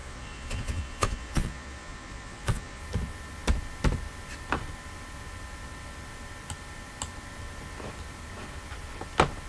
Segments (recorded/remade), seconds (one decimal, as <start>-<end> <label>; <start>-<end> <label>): 0.0-2.8 remade; 2.8-9.5 recorded